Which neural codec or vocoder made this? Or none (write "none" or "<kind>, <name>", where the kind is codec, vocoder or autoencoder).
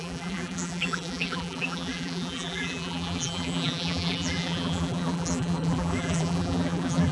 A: vocoder, BigVGAN v2